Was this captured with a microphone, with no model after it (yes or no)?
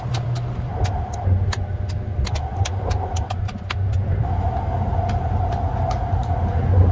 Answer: yes